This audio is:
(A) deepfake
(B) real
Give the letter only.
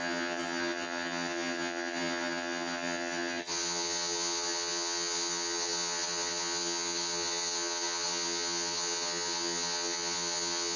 A